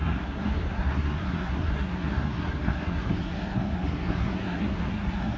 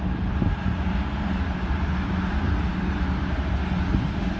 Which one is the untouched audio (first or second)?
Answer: second